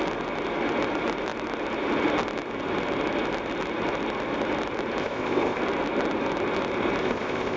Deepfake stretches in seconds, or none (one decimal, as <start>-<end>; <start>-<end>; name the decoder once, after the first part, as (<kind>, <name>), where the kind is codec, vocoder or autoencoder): 5.0-5.6 (codec, ZipCodec); 7.0-7.6